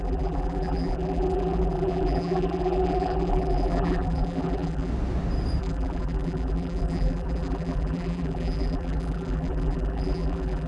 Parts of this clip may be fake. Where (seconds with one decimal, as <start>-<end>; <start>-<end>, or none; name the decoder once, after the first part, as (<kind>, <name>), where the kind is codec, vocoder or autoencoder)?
0.0-4.9 (vocoder, BigVGAN v2); 5.6-10.7